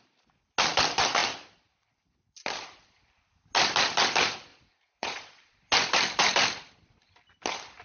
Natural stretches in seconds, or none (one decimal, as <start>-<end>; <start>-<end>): 0.0-4.5; 5.6-7.8